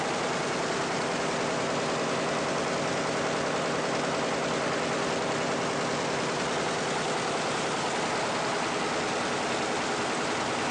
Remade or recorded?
recorded